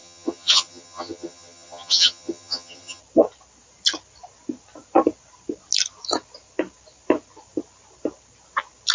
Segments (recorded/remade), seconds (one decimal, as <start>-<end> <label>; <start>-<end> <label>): 0.0-3.0 remade; 3.0-8.9 recorded